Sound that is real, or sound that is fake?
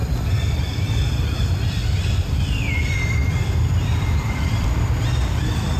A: fake